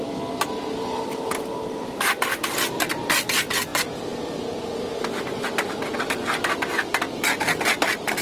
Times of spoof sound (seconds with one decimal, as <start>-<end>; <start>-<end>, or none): none